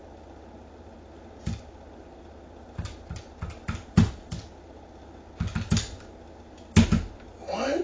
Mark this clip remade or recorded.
recorded